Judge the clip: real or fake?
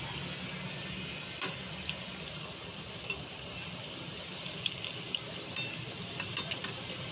real